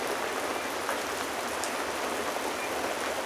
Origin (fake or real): real